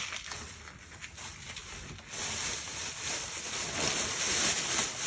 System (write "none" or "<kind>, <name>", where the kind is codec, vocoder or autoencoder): none